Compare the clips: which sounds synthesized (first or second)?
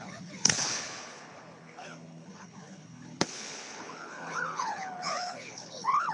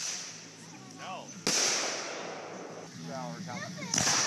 first